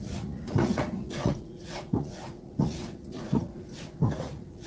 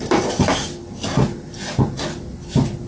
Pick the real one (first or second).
second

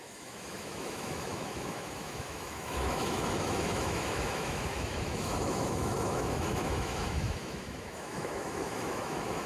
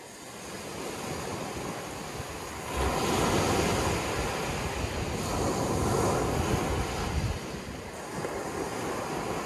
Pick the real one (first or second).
second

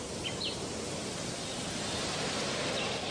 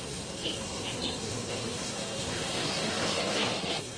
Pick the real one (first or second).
first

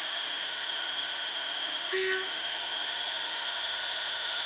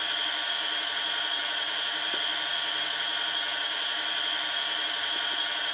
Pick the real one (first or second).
second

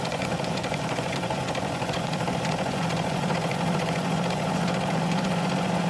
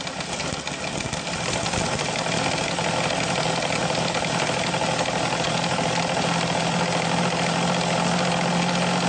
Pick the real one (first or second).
second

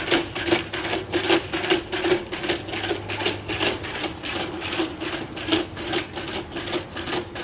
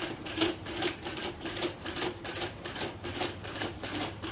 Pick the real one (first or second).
first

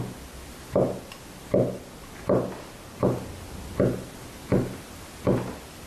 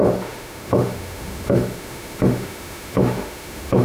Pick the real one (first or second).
first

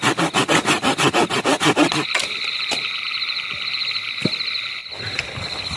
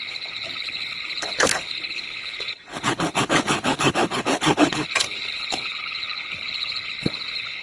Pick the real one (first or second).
first